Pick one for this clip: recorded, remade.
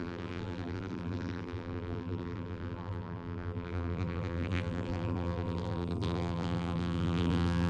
remade